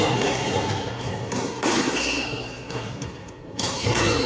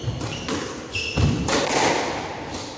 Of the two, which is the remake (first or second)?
first